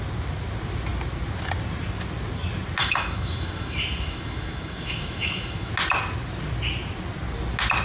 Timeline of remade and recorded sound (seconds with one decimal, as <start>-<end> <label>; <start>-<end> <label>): 0.0-2.8 recorded; 2.8-5.7 remade; 5.7-7.8 recorded